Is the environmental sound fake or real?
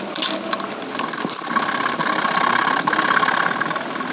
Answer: real